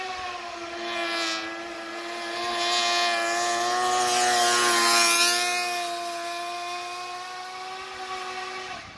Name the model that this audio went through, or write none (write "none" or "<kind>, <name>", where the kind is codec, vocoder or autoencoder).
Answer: none